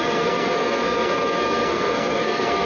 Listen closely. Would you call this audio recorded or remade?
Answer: remade